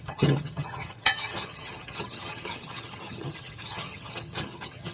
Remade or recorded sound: remade